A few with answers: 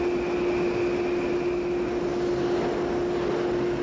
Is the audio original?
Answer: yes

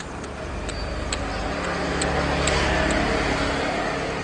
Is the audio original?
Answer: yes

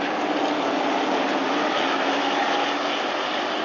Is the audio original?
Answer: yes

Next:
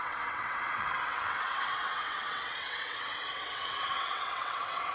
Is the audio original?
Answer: no